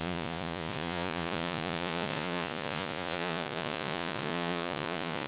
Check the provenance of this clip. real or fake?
fake